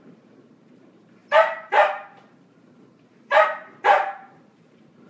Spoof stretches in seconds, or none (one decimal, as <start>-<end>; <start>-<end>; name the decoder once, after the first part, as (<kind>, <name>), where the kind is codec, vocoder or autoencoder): 0.0-1.2 (vocoder, BigVGAN v2); 4.3-5.1